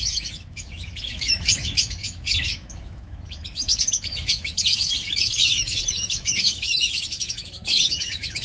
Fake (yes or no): yes